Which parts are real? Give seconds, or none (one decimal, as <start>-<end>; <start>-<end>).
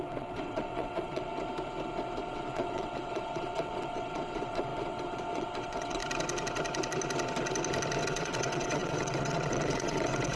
1.3-2.2; 6.0-8.0